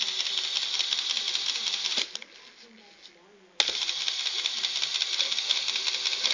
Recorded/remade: recorded